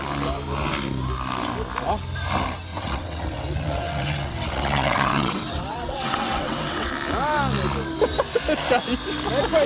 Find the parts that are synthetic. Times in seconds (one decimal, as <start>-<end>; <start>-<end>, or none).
2.7-6.9

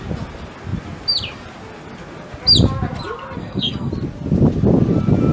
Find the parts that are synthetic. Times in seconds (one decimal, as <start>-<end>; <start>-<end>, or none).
3.4-3.9

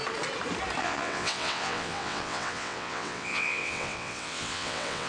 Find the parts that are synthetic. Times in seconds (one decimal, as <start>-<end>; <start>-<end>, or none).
0.8-5.1

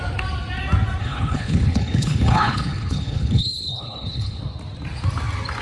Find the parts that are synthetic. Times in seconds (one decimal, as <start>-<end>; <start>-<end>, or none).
1.0-4.4

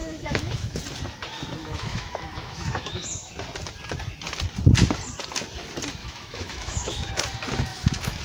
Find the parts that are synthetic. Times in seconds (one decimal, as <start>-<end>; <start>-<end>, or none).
0.0-0.8; 1.6-3.3; 6.0-7.1; 7.7-8.2

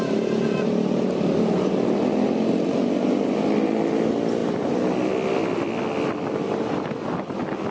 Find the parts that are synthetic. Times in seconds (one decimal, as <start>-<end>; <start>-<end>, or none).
none

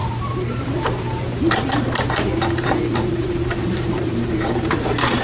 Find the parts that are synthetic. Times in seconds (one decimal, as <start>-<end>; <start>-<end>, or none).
0.0-5.2